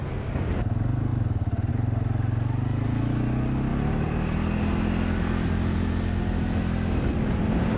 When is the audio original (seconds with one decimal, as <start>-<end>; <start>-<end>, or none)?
0.0-7.8